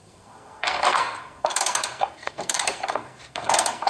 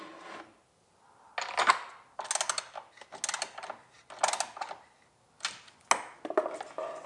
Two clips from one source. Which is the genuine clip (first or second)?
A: second